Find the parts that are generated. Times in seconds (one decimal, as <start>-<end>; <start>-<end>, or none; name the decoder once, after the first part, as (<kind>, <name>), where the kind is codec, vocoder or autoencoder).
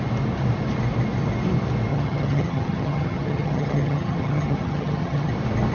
1.9-5.3 (vocoder, HiFi-GAN)